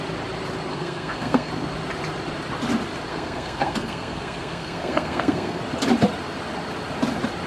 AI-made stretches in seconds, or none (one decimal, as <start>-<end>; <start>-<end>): 0.7-1.5; 3.1-5.6